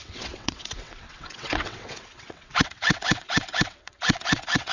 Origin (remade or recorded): remade